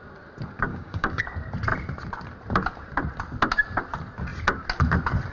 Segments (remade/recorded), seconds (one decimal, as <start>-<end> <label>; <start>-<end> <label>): 0.0-0.7 recorded; 0.7-1.2 remade; 1.2-5.3 recorded